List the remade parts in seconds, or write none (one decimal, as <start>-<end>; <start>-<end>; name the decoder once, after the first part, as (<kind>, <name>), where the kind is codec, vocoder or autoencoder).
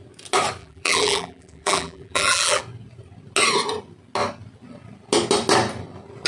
0.6-2.6 (vocoder, BigVGAN v2)